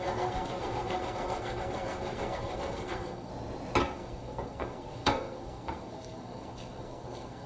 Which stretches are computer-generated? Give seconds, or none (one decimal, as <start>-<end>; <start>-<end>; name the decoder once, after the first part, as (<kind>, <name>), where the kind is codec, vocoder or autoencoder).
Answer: 0.0-3.3 (codec, SNAC); 3.8-7.5